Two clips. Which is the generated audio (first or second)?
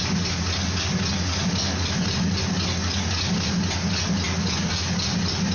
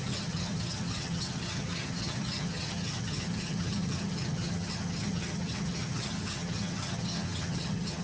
second